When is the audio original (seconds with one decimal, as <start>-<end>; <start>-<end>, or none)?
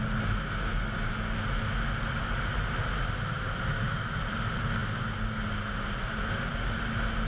0.0-7.3